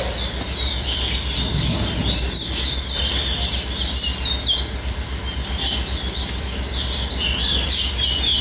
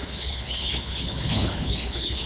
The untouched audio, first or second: first